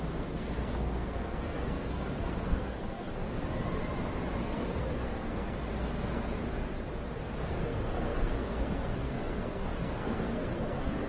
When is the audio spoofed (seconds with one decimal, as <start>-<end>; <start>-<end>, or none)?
0.0-3.1; 4.4-6.4; 7.4-11.1